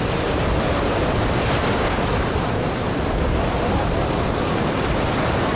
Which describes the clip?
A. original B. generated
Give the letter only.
B